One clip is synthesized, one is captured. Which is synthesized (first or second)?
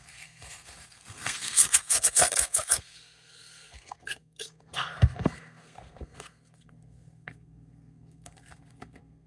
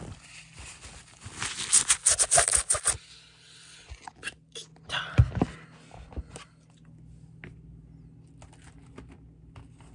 first